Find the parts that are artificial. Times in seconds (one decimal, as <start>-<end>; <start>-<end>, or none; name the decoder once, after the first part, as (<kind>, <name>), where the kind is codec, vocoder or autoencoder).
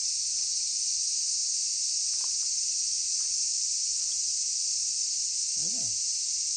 4.8-5.7 (vocoder, Vocos)